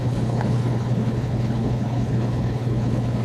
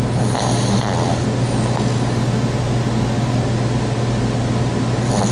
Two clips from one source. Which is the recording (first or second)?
second